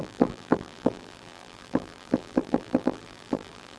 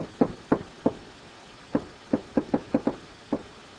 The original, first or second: second